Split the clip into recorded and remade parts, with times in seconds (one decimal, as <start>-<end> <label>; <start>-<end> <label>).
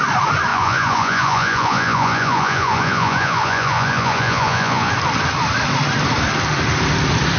0.0-0.5 recorded; 0.5-4.9 remade; 4.9-7.4 recorded